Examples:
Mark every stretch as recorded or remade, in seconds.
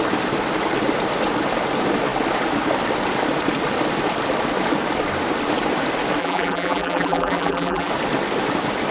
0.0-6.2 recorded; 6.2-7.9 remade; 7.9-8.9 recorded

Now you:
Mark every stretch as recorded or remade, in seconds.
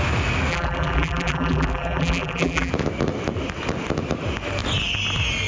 0.0-0.5 recorded; 0.5-2.7 remade; 2.7-5.5 recorded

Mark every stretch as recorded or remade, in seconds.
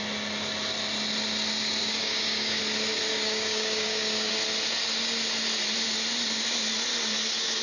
0.0-1.8 recorded; 1.8-2.6 remade; 2.6-3.1 recorded; 3.1-4.3 remade; 4.3-7.6 recorded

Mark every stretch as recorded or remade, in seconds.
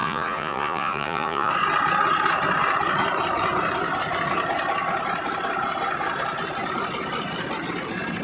0.0-1.5 remade; 1.5-8.2 recorded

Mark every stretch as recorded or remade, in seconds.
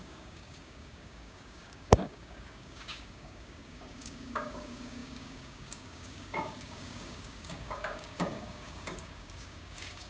0.0-10.1 remade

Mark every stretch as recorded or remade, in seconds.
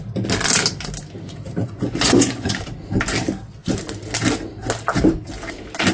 0.0-1.6 recorded; 1.6-2.5 remade; 2.5-5.9 recorded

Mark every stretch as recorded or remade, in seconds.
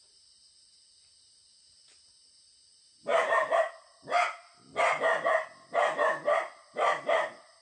0.0-7.6 recorded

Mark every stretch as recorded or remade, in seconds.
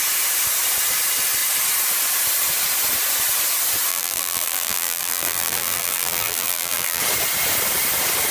0.0-3.9 recorded; 3.9-7.0 remade; 7.0-8.3 recorded